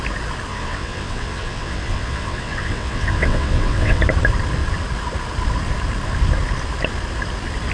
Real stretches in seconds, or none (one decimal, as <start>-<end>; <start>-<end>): 0.0-0.5; 4.0-7.7